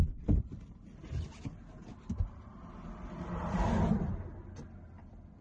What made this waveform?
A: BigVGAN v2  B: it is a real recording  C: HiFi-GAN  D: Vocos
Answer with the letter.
B